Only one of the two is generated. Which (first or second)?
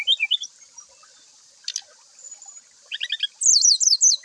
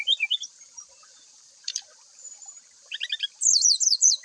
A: second